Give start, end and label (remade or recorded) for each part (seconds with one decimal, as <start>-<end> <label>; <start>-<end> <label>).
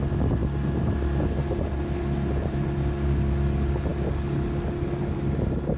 0.0-5.8 recorded